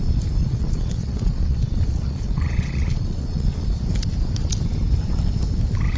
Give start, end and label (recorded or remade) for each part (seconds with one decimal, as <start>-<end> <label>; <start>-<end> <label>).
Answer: 0.0-0.4 recorded; 0.4-3.8 remade; 3.8-6.0 recorded